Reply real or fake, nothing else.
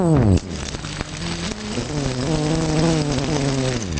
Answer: real